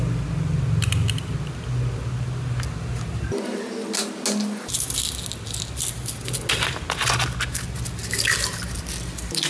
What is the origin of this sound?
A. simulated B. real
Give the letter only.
B